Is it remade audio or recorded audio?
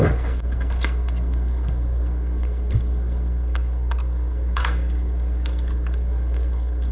remade